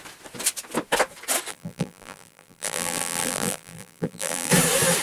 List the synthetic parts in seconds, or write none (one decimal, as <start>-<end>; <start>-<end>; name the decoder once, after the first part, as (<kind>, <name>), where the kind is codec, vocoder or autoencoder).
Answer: 1.5-4.5 (vocoder, BigVGAN v2)